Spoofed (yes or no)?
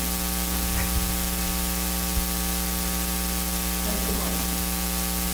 no